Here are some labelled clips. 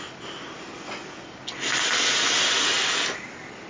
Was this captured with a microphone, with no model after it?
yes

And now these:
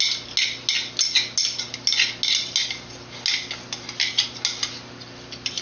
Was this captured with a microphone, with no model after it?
yes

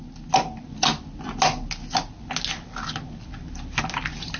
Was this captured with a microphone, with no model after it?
yes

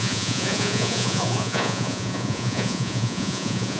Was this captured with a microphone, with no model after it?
no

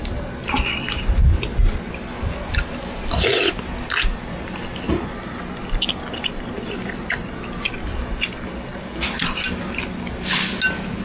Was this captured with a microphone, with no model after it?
yes